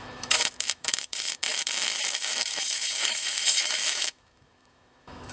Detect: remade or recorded remade